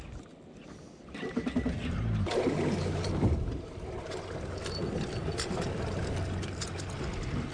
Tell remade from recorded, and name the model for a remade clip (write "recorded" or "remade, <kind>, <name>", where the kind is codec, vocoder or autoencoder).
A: recorded